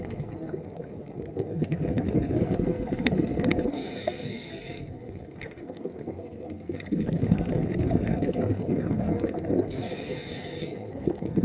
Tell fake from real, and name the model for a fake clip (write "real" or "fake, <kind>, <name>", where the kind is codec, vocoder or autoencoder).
fake, codec, SNAC